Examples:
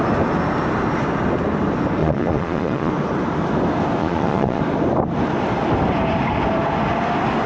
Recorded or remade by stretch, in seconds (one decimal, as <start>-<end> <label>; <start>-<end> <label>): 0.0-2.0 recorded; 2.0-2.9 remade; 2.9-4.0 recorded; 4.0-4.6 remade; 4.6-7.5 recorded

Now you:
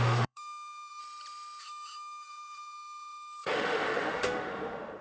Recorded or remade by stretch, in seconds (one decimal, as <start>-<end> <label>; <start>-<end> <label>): 0.0-1.0 remade; 1.0-1.6 recorded; 1.6-5.0 remade

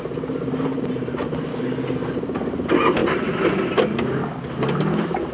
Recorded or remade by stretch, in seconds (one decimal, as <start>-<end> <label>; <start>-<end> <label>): 0.0-1.5 recorded; 1.5-2.1 remade; 2.1-5.3 recorded

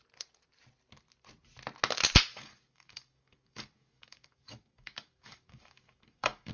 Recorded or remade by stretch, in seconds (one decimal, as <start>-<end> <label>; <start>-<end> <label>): 0.0-2.3 recorded; 2.3-6.5 remade